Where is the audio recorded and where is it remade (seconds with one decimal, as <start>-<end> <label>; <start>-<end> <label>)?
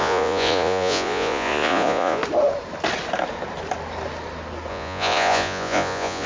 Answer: 0.0-2.2 remade; 2.2-4.7 recorded; 4.7-6.3 remade